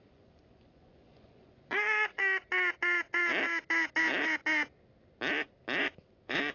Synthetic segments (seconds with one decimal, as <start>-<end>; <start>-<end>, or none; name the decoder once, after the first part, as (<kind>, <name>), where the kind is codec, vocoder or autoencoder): 0.0-2.2 (vocoder, Vocos); 5.8-6.5